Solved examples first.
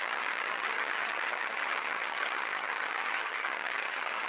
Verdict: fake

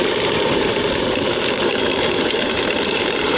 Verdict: fake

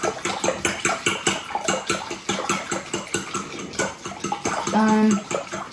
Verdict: real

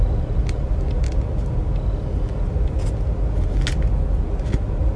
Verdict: real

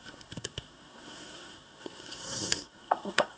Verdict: fake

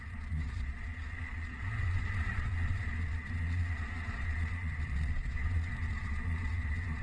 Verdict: fake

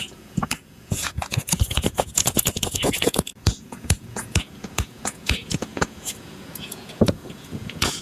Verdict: fake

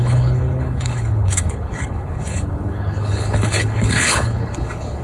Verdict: fake